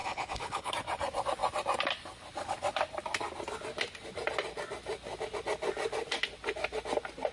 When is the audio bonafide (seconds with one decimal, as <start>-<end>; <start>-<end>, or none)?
0.7-7.3